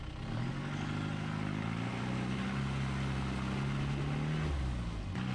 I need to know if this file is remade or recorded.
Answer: recorded